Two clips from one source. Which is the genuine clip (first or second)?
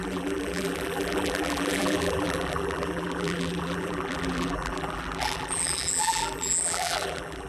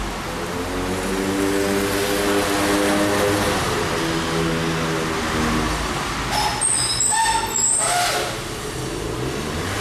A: second